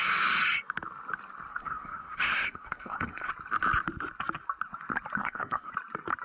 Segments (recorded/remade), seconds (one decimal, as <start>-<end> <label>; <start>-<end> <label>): 0.0-1.5 recorded; 1.5-3.3 remade; 3.3-5.2 recorded; 5.2-5.7 remade; 5.7-6.2 recorded